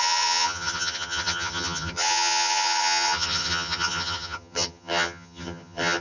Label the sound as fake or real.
fake